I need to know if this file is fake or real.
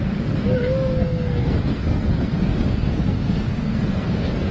fake